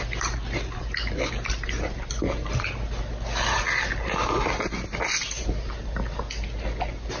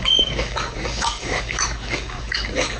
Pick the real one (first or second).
first